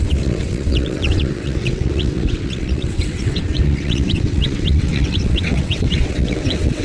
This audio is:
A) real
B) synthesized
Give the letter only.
B